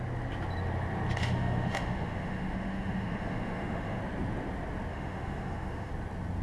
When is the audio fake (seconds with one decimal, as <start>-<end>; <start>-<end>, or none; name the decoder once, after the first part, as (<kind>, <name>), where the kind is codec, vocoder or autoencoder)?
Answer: 1.2-4.0 (autoencoder, DAC-VAE); 4.9-5.9